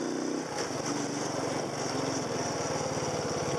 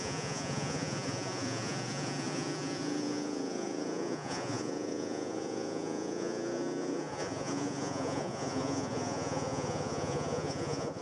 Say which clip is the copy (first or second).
second